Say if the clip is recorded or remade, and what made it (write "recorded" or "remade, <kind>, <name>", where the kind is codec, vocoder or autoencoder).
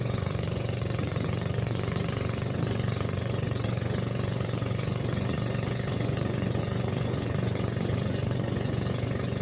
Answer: remade, vocoder, Vocos